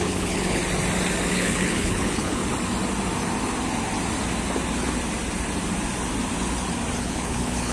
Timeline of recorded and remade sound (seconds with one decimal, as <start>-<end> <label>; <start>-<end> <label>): 0.0-0.6 remade; 0.6-1.3 recorded; 1.3-2.4 remade; 2.4-7.0 recorded; 7.0-7.7 remade